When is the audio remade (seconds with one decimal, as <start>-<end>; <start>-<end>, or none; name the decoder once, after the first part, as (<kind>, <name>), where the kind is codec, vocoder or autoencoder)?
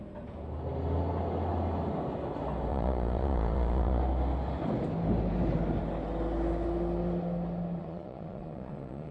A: 2.7-4.0 (vocoder, Vocos); 7.8-9.1